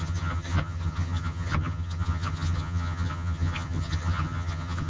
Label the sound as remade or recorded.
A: remade